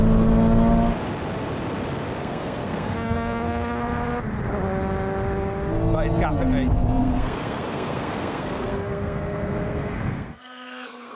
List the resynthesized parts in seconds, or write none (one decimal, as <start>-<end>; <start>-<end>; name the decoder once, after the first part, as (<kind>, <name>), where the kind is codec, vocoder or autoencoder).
2.2-3.8 (codec, SNAC); 7.0-11.2